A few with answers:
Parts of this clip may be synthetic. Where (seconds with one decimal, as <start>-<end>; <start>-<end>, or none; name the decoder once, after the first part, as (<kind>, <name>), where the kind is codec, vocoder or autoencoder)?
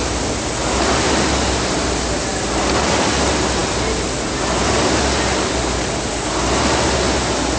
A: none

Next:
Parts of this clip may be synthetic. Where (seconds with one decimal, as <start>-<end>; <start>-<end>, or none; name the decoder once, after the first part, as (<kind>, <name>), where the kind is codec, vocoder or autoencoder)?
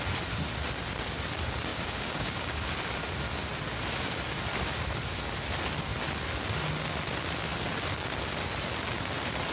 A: 1.7-2.9 (codec, DAC)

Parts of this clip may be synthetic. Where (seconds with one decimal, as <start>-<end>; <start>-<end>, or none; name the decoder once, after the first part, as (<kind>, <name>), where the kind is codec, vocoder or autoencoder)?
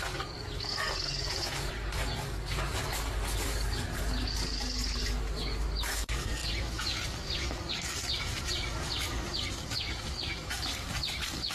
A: 0.0-11.5 (codec, DAC)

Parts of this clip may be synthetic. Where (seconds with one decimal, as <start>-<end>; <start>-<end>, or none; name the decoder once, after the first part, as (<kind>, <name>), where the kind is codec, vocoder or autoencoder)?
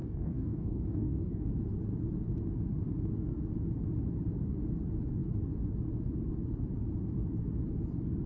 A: 0.0-1.5 (codec, DAC)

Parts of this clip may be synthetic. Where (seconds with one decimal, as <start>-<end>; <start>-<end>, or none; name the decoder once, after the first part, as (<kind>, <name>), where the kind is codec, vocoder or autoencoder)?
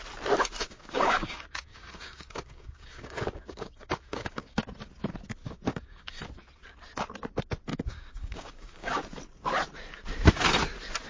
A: 0.6-4.6 (codec, DAC); 5.4-6.2; 7.7-9.0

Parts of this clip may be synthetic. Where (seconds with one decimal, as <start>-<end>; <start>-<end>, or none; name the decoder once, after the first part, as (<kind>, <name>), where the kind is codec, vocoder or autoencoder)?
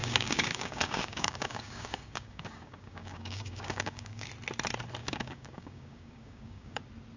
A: 0.0-4.3 (codec, DAC); 5.0-6.8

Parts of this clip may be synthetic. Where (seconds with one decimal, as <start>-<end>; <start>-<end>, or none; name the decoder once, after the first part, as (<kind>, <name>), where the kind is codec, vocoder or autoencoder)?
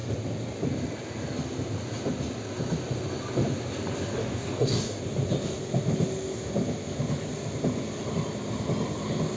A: 4.2-5.0 (codec, DAC)